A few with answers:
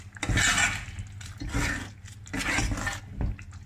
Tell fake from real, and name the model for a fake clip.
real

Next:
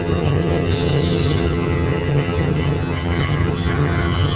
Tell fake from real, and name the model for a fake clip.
fake, vocoder, HiFi-GAN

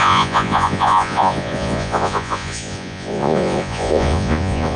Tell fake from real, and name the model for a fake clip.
fake, vocoder, Vocos